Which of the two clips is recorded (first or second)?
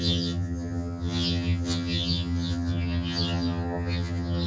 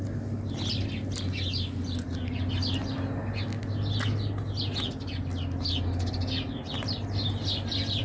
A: second